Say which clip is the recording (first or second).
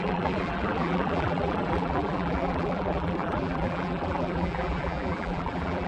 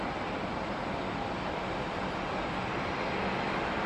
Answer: second